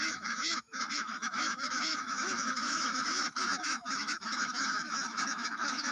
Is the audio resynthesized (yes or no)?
yes